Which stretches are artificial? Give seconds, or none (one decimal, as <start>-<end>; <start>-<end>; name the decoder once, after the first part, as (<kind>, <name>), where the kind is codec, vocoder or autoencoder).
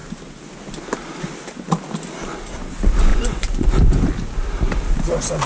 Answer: 3.1-3.7 (vocoder, Vocos)